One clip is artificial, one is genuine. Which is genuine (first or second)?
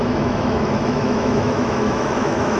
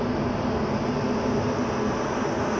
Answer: second